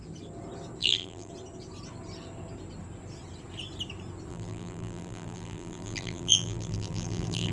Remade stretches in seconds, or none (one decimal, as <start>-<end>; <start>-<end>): 0.8-1.3; 4.3-7.5